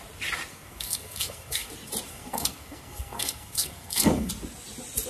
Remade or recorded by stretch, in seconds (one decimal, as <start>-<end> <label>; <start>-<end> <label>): 0.0-0.5 recorded; 0.5-1.7 remade; 1.7-2.1 recorded; 2.1-4.3 remade; 4.3-5.1 recorded